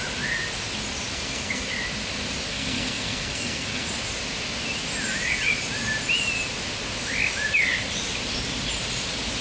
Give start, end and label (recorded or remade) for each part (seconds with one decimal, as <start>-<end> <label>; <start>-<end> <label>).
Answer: 0.0-1.1 recorded; 1.1-1.7 remade; 1.7-2.5 recorded; 2.5-3.9 remade; 3.9-9.4 recorded

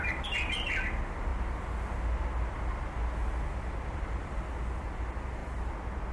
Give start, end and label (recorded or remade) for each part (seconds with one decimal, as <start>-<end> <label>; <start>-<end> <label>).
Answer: 0.0-6.1 recorded

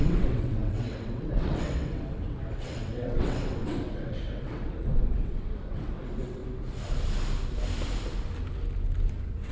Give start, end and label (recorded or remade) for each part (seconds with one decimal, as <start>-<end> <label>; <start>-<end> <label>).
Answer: 0.0-6.4 remade; 6.4-9.1 recorded; 9.1-9.5 remade

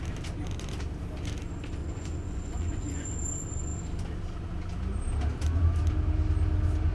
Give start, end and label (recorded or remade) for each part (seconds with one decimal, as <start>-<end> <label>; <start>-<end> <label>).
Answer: 0.0-1.8 recorded; 1.8-3.1 remade; 3.1-6.9 recorded

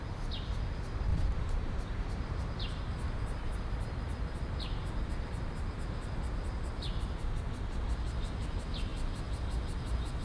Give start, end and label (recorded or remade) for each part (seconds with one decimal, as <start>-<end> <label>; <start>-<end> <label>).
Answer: 0.0-1.1 recorded; 1.1-3.5 remade; 3.5-10.2 recorded

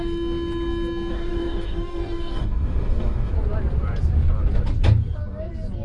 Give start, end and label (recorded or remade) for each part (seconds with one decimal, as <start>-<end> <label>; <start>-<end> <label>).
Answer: 0.0-1.1 recorded; 1.1-3.3 remade; 3.3-5.8 recorded